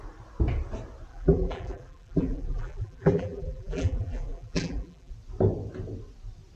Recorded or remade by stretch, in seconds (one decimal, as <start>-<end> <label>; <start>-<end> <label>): 0.0-1.1 recorded; 1.1-5.1 remade; 5.1-6.6 recorded